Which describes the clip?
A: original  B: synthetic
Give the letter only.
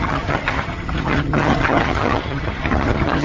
B